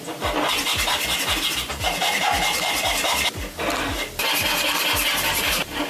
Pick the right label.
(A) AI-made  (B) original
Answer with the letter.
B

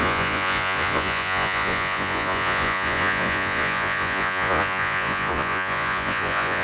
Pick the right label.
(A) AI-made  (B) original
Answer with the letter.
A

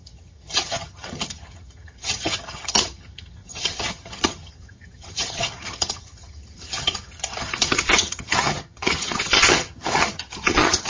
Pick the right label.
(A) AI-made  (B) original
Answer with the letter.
A